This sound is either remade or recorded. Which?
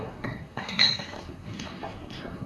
remade